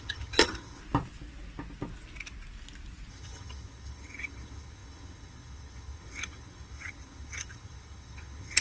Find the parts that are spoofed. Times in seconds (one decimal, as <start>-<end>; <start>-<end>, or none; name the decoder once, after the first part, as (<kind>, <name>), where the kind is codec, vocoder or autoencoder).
0.0-0.8 (vocoder, HiFi-GAN); 3.1-8.6